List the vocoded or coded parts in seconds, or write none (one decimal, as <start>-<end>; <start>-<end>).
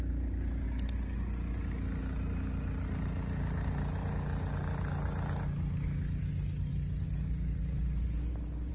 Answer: none